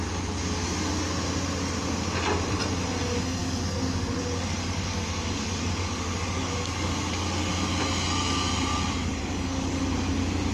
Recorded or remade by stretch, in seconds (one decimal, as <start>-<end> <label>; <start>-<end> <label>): 0.0-3.4 recorded; 3.4-7.5 remade; 7.5-9.0 recorded; 9.0-10.1 remade; 10.1-10.5 recorded